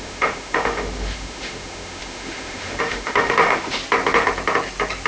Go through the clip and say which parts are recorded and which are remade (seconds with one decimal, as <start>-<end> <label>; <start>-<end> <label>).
0.0-3.8 remade; 3.8-5.1 recorded